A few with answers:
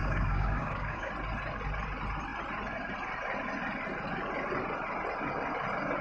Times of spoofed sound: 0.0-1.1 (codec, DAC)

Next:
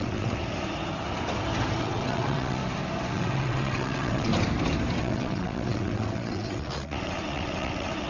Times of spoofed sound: 0.0-0.4 (vocoder, WaveNeXt); 1.8-2.6; 3.1-4.3; 5.0-8.1

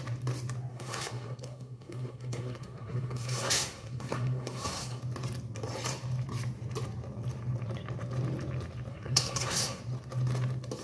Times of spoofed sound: 0.7-5.0 (codec, SNAC); 8.9-9.8

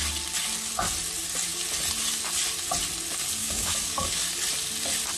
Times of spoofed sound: 3.4-4.2 (codec, DAC)

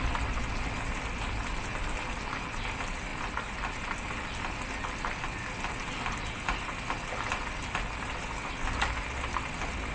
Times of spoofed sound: none